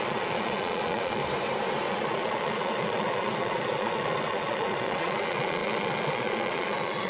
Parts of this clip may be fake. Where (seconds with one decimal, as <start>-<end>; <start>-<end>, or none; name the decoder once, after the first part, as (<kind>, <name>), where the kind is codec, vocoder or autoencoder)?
0.0-1.2 (vocoder, Vocos); 1.9-7.1